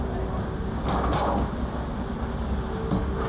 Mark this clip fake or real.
real